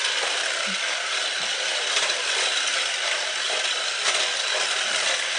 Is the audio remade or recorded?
recorded